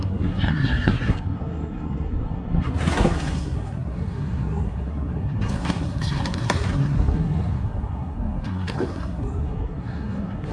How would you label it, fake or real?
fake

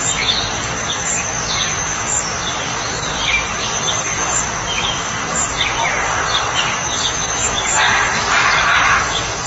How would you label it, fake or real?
fake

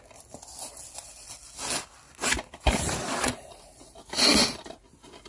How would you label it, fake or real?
real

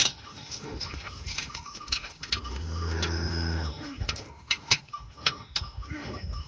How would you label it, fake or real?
fake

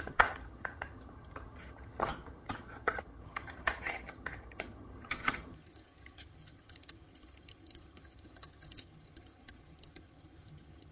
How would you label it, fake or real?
fake